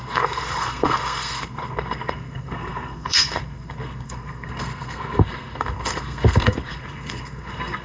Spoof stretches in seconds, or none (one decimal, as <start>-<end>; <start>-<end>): 0.0-7.8